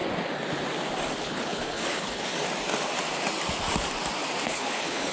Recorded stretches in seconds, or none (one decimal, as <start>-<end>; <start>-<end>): 0.0-1.2; 2.3-4.4